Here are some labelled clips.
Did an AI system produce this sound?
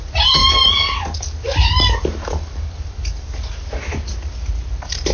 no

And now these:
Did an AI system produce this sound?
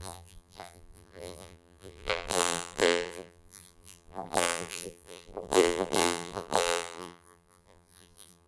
yes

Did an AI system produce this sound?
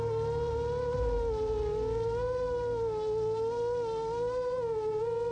no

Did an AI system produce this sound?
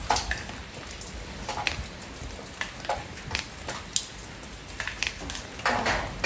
no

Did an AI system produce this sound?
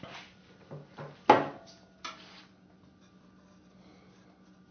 no